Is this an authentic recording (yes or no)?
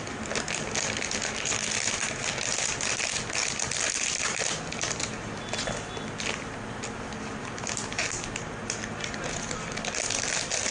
yes